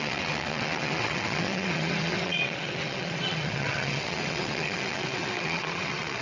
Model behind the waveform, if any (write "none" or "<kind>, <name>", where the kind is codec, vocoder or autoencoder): vocoder, WaveNeXt